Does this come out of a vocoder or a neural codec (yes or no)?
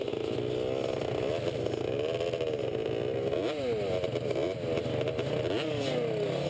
no